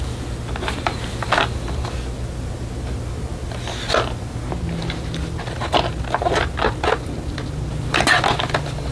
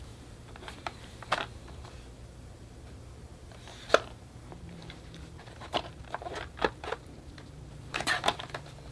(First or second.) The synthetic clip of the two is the second